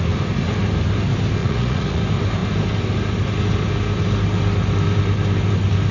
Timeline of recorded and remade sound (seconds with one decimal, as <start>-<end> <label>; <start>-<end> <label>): 0.0-1.4 recorded; 1.4-2.0 remade; 2.0-5.9 recorded